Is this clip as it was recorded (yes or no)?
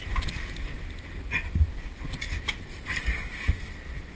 yes